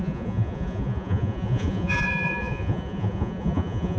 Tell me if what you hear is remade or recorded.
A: remade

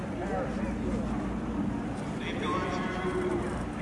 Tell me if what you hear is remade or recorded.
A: recorded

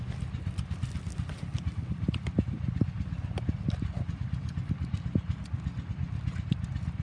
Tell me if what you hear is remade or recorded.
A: recorded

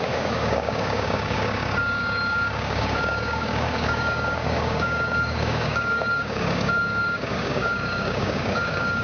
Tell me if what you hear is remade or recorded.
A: remade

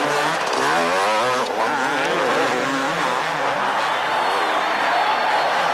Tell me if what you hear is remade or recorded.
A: recorded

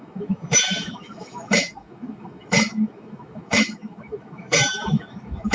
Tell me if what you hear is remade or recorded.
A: remade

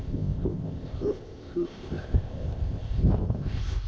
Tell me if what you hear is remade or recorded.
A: remade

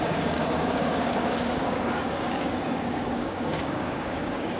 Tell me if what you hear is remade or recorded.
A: remade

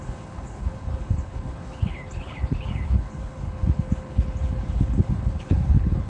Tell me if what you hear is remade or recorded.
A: remade